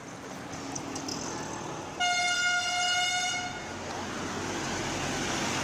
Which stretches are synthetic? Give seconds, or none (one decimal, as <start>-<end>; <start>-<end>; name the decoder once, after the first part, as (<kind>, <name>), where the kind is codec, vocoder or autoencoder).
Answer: none